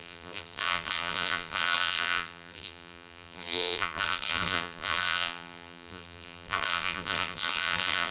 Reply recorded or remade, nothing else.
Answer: remade